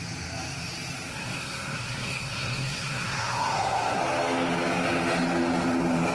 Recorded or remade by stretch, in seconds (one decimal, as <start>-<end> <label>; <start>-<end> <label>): 0.0-1.1 recorded; 1.1-4.0 remade; 4.0-6.1 recorded